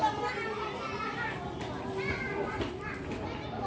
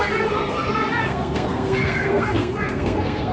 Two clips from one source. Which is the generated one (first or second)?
second